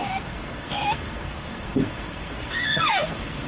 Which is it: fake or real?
fake